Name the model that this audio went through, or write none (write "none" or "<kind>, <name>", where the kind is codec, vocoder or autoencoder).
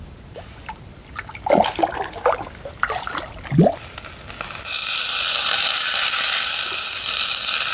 none